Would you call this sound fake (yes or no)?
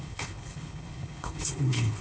yes